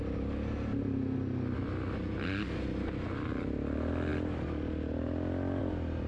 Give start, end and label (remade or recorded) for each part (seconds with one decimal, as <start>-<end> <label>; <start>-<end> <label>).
0.0-6.1 recorded